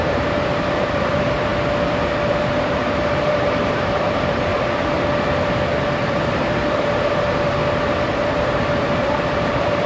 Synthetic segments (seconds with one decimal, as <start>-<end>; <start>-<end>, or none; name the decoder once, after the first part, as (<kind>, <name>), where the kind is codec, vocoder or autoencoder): 0.0-1.5 (vocoder, BigVGAN v2); 2.4-4.5; 6.0-7.6; 8.4-9.9